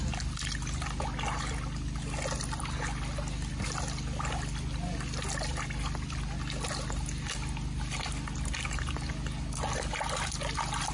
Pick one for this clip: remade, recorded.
recorded